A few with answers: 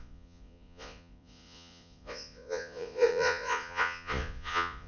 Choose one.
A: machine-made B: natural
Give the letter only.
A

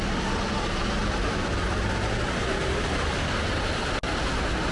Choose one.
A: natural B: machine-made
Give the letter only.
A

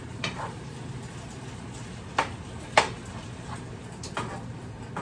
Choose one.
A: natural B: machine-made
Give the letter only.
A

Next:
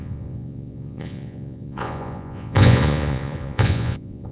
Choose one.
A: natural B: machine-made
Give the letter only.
B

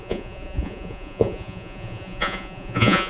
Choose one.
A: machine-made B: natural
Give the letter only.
A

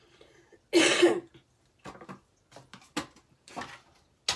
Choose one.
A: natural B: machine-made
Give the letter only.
A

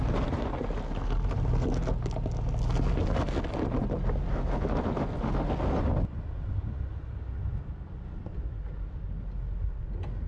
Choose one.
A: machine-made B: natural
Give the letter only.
B